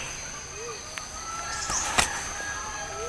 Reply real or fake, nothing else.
real